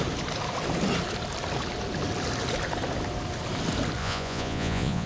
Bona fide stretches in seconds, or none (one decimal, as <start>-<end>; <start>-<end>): 0.0-4.0